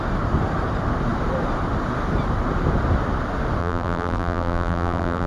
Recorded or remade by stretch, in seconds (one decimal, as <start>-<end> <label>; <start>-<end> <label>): 0.0-3.6 recorded; 3.6-5.3 remade